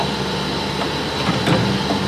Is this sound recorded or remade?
recorded